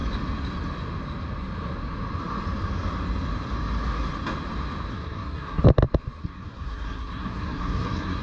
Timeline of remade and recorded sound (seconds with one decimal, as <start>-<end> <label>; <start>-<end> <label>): 0.0-4.9 recorded; 4.9-5.6 remade; 5.6-6.2 recorded; 6.2-8.2 remade